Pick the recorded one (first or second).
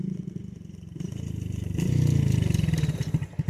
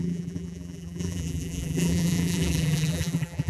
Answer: first